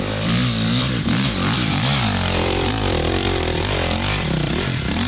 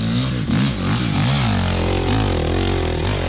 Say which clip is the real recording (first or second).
second